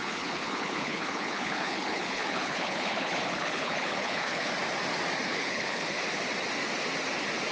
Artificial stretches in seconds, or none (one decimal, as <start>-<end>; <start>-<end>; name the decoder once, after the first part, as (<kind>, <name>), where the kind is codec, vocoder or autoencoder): 0.0-4.5 (codec, HILCodec); 5.3-6.0

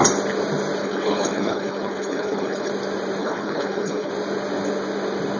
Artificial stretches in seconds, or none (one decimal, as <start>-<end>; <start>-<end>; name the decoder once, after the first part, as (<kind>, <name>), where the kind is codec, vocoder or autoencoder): 0.8-2.7 (codec, HILCodec); 3.2-4.1

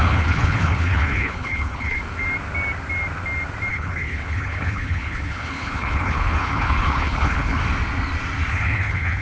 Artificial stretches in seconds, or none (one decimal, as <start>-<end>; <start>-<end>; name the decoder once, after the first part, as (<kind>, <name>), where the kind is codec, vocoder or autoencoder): 0.0-2.0 (codec, HILCodec); 3.7-7.6; 8.5-9.2

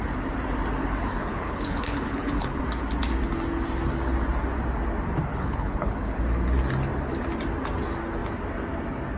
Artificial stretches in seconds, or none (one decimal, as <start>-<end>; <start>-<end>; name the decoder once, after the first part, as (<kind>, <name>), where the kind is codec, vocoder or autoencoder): 0.8-2.6 (codec, HILCodec); 5.3-6.2

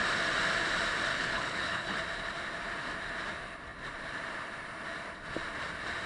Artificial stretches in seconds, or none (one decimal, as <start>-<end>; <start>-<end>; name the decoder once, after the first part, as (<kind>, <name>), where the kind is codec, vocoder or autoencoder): 1.1-2.0 (codec, HILCodec)

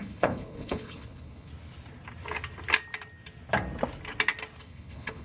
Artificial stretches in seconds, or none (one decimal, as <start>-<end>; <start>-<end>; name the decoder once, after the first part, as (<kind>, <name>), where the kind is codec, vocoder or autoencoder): 0.0-1.5 (codec, HILCodec); 4.6-5.2

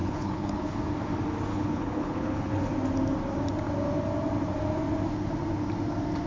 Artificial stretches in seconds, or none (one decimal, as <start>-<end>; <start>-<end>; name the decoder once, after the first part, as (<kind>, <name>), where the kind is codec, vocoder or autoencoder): 0.0-0.8 (codec, HILCodec); 1.5-2.6